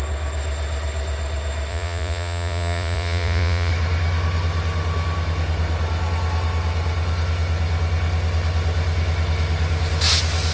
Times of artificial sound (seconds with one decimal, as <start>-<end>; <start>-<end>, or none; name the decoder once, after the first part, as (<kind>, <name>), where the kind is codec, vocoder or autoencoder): 1.7-3.7 (vocoder, Vocos)